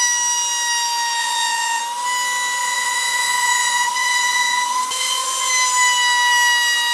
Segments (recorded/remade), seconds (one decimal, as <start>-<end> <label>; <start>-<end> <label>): 0.0-1.2 recorded; 1.2-1.8 remade; 1.8-2.6 recorded; 2.6-5.5 remade; 5.5-6.9 recorded